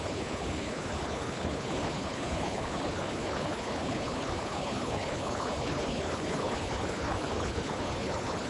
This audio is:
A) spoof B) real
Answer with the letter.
A